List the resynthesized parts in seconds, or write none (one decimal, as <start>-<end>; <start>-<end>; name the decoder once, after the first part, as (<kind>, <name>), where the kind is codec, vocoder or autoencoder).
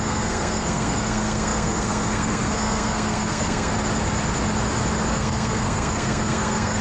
0.0-3.7 (codec, SNAC); 5.1-6.8